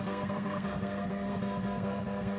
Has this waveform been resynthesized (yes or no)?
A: yes